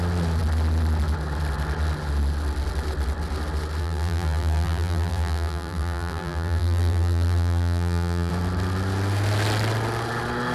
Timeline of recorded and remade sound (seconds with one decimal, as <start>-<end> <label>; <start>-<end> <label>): 0.0-3.8 recorded; 3.8-8.3 remade; 8.3-10.5 recorded